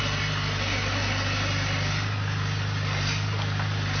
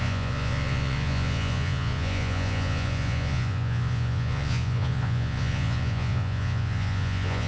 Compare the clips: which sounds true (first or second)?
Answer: first